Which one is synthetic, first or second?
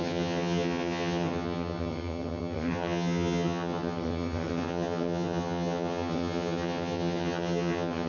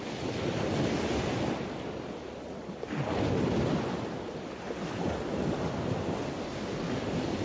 first